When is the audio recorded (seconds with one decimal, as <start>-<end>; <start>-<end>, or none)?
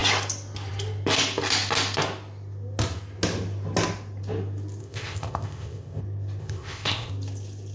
0.0-4.8; 6.0-6.4; 7.1-7.7